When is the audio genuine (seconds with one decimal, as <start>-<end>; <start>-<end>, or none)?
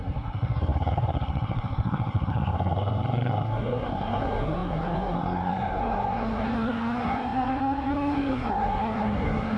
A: none